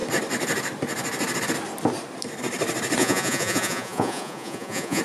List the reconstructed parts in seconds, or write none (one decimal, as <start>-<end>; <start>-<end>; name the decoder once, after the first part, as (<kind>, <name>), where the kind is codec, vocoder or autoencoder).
3.0-5.0 (vocoder, Vocos)